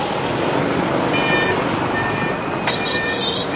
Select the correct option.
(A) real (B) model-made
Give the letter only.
A